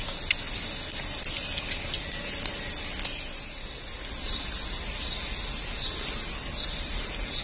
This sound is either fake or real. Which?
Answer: real